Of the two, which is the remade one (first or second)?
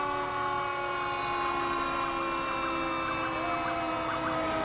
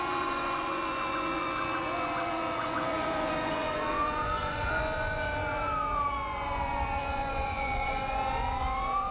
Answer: second